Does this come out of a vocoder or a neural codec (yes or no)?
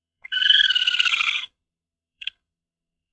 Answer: yes